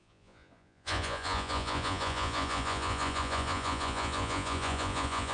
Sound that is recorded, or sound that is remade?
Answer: remade